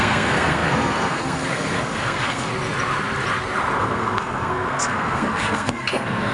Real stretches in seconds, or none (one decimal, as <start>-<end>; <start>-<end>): 2.5-3.8